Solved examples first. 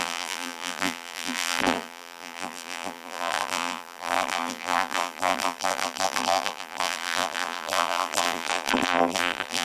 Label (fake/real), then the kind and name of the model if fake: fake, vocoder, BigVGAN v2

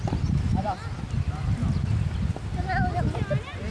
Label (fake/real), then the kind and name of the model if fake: real